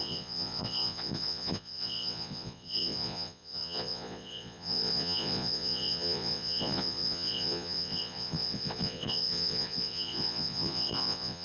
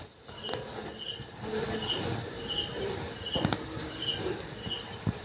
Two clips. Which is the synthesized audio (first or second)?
first